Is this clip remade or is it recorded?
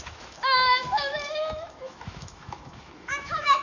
remade